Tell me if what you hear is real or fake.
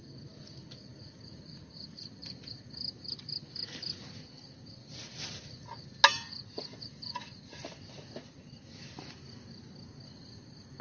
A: real